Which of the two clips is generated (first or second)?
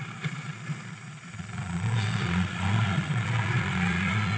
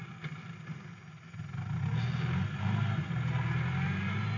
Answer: first